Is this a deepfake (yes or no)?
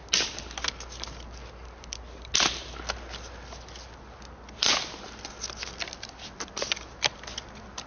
no